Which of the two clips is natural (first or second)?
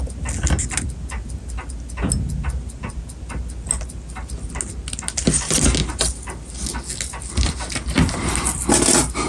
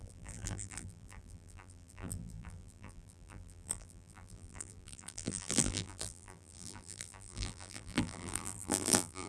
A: first